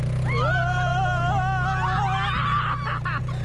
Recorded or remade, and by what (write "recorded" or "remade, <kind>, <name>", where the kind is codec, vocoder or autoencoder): recorded